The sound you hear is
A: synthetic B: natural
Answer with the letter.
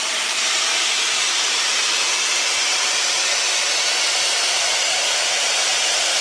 A